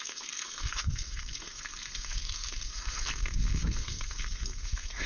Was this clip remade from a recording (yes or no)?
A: yes